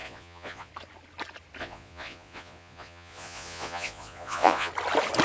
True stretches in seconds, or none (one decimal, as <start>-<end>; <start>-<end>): 0.7-1.6; 4.7-5.2